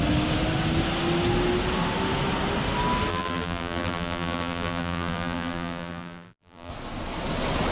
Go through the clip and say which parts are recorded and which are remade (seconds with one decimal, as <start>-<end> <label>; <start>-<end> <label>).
0.0-3.1 recorded; 3.1-6.7 remade; 6.7-7.7 recorded